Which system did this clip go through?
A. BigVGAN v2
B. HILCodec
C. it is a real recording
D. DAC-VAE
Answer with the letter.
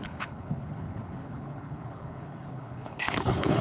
B